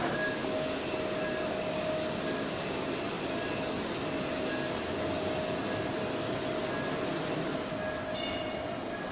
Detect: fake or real real